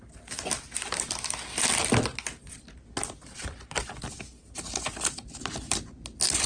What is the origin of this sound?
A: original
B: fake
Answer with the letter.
A